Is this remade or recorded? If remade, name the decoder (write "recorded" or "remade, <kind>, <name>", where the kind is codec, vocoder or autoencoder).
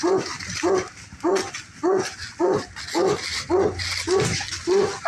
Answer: recorded